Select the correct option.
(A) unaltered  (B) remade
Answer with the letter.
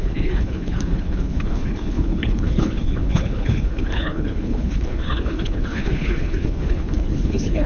B